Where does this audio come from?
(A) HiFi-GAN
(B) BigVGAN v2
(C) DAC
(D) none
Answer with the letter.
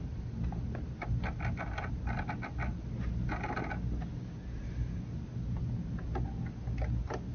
D